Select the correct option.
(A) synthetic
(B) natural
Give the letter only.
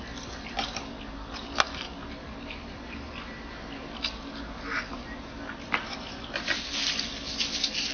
B